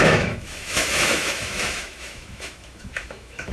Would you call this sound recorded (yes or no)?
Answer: no